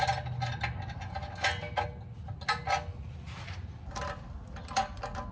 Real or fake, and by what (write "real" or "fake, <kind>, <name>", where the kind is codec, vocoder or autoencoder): real